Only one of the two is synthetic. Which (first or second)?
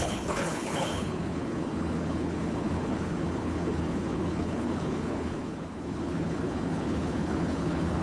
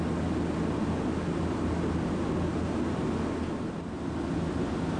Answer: first